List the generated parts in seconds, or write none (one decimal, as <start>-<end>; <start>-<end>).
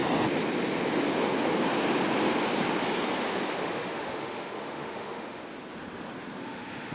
3.6-5.4; 6.4-6.9